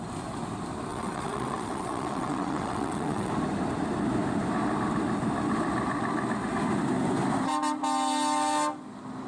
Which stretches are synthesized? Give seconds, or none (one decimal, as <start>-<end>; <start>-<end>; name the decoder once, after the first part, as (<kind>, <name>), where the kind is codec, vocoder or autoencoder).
0.9-3.3 (vocoder, WaveNeXt)